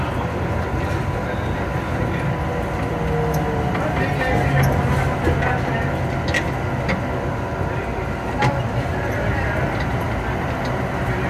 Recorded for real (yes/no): yes